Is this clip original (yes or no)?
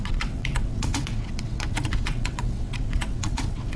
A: no